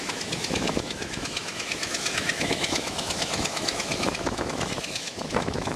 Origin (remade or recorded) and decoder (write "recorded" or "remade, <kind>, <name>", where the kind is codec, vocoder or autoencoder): remade, autoencoder, DAC-VAE